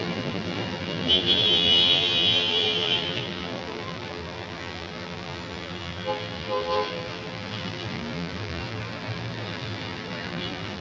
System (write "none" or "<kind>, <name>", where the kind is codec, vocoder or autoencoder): vocoder, BigVGAN v2